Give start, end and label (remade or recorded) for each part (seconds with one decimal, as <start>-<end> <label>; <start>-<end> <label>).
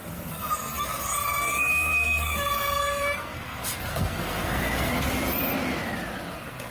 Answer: 0.0-4.9 remade; 4.9-6.3 recorded; 6.3-6.7 remade